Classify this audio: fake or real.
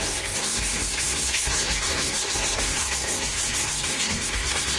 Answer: fake